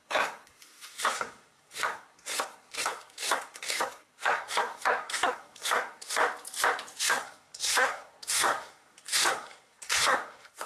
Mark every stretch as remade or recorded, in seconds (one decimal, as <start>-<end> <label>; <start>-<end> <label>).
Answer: 0.0-6.2 remade; 6.2-7.0 recorded; 7.0-10.7 remade